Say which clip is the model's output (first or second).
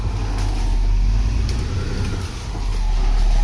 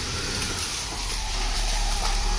second